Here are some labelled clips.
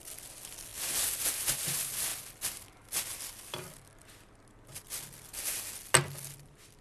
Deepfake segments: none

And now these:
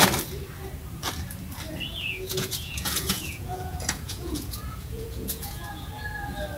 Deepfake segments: 1.9-5.9 (vocoder, Vocos)

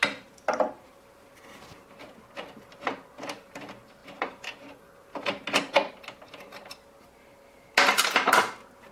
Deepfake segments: none